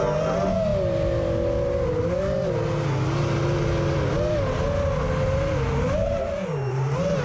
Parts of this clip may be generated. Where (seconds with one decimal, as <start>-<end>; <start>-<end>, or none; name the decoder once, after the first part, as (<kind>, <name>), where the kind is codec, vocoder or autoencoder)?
none